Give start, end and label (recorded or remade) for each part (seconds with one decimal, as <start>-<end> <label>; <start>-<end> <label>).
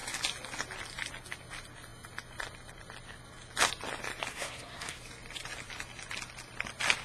0.0-4.3 recorded; 4.3-5.0 remade; 5.0-7.0 recorded